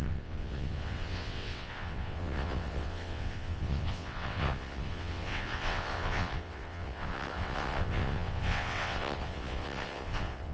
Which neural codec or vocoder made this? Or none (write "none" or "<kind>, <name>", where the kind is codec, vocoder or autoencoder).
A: vocoder, WaveNeXt